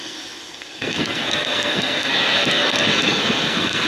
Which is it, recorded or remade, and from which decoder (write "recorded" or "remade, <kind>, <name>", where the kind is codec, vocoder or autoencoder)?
remade, codec, SNAC